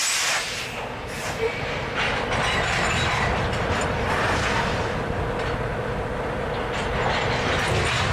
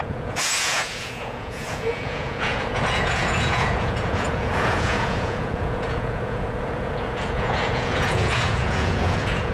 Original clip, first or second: first